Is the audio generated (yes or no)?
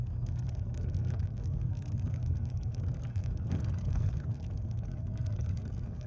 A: yes